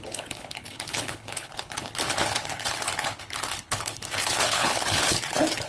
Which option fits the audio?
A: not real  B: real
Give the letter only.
A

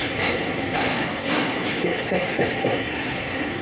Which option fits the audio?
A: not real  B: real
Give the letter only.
A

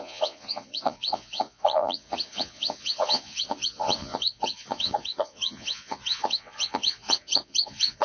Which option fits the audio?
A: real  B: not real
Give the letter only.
B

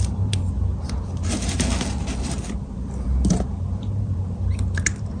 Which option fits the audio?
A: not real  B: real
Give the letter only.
B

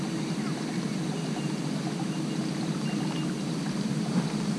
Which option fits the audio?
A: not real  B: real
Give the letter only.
B